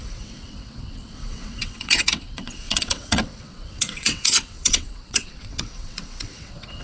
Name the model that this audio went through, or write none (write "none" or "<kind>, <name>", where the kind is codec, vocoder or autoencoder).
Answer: vocoder, WaveNeXt